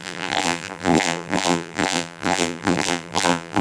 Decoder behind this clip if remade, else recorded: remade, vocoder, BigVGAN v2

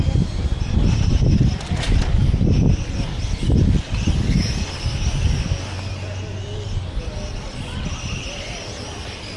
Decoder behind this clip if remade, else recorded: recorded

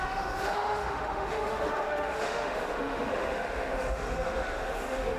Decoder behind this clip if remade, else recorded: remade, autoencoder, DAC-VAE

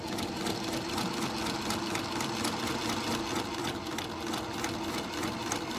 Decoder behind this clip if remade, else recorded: recorded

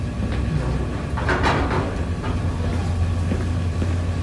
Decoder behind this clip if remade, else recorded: recorded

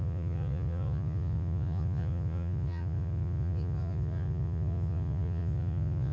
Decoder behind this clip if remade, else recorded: remade, vocoder, Vocos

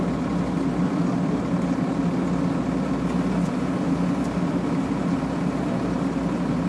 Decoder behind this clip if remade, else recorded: recorded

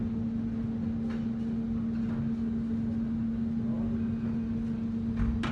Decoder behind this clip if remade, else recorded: recorded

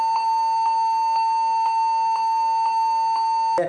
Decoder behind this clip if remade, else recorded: recorded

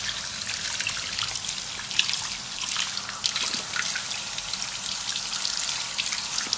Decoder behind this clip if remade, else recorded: recorded